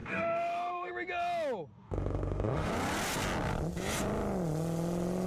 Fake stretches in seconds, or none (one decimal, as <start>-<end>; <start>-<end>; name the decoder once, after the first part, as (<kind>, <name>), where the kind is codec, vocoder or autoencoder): 0.0-0.9 (autoencoder, DAC-VAE); 1.7-2.7